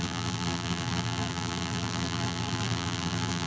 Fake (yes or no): yes